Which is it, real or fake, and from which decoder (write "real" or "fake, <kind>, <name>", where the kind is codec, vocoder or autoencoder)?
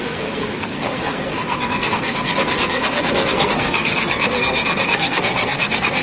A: fake, codec, SNAC